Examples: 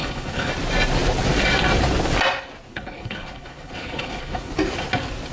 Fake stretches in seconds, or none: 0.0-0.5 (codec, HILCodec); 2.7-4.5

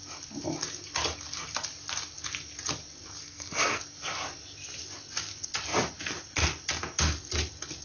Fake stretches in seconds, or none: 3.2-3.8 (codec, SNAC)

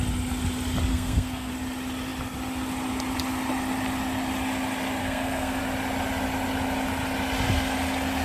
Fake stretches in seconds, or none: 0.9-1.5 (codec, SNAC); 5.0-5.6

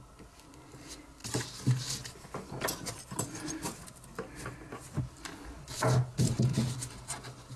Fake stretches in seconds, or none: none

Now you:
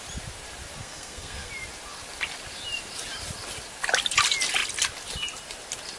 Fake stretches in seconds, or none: 0.8-1.5 (codec, SNAC)

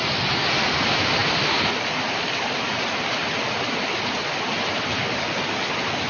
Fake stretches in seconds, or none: 1.2-4.9 (vocoder, BigVGAN v2)